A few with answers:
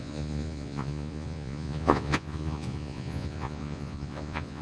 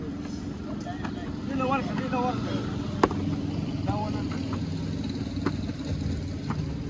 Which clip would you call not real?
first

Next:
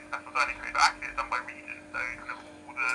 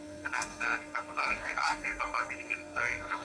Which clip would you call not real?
second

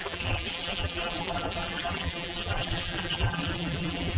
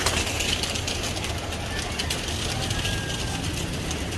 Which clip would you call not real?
first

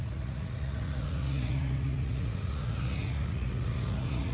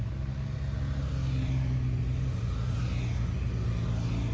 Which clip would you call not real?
first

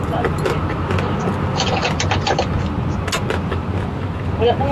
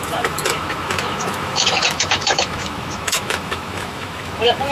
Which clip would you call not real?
second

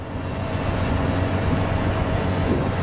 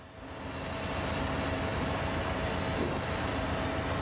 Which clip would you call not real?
first